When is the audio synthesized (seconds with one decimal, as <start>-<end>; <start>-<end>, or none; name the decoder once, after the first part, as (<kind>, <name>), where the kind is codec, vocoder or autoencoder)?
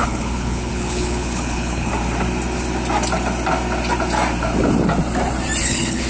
0.0-1.9 (codec, HILCodec); 5.6-6.1